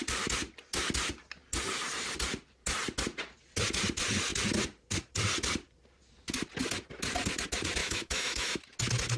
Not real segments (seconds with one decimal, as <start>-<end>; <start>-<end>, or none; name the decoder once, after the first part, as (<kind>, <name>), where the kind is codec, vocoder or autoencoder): 7.8-8.6 (autoencoder, DAC-VAE)